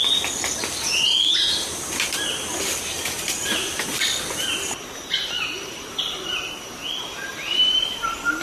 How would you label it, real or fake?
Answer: fake